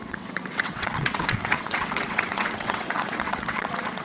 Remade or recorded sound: remade